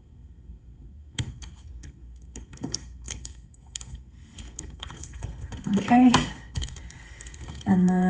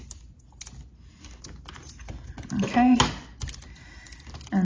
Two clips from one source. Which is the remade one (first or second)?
first